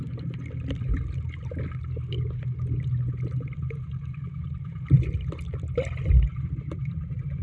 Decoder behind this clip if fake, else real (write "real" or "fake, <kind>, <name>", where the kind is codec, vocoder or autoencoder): real